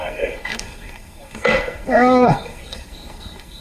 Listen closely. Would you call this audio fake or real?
fake